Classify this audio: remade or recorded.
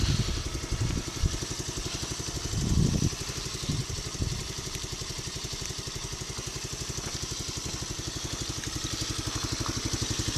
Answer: recorded